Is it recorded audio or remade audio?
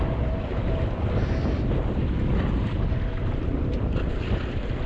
remade